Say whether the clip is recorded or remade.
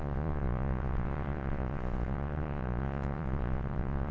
remade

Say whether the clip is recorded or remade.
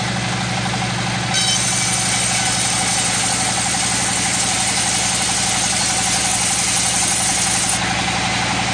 recorded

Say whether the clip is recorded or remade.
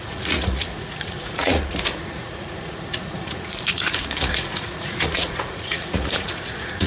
remade